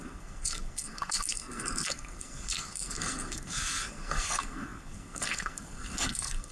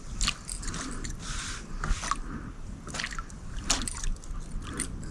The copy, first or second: first